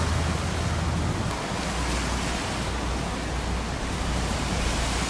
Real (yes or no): yes